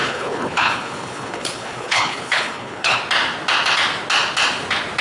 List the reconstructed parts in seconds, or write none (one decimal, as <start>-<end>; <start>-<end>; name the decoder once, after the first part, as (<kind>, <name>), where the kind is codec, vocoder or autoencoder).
0.0-3.0 (codec, HILCodec)